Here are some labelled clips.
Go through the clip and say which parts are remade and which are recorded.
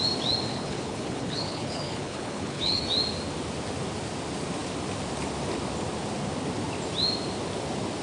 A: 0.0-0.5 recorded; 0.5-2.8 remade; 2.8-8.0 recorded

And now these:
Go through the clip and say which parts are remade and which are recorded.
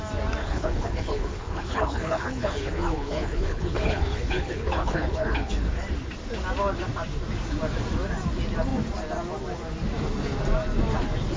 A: 0.0-0.4 recorded; 0.4-5.5 remade; 5.5-11.4 recorded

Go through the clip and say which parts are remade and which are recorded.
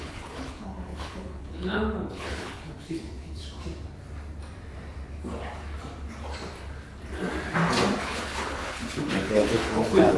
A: 0.0-3.4 remade; 3.4-8.0 recorded; 8.0-10.2 remade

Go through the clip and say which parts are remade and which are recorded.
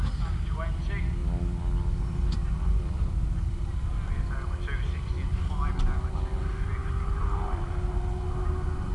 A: 0.0-8.9 recorded